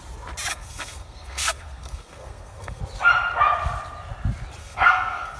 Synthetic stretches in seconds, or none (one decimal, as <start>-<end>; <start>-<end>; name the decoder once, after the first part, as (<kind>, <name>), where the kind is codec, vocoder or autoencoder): 0.5-2.8 (codec, SNAC); 4.6-5.4